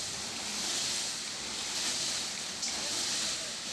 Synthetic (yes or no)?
no